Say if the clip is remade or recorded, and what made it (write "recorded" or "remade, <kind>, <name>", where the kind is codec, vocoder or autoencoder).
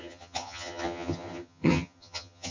remade, vocoder, HiFi-GAN